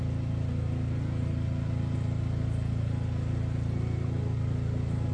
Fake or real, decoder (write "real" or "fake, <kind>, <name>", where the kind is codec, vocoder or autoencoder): real